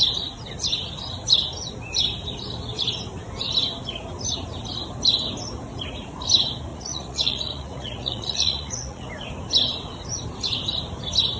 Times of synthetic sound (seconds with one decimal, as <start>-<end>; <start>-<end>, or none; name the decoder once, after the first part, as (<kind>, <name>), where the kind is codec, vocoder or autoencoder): 6.7-9.1 (vocoder, Vocos)